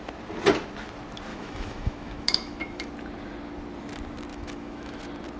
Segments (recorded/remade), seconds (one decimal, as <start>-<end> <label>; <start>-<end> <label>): 0.0-1.3 recorded; 1.3-2.9 remade; 2.9-4.3 recorded; 4.3-5.0 remade; 5.0-5.4 recorded